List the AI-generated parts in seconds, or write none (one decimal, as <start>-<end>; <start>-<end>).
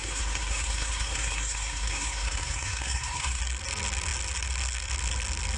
0.0-3.4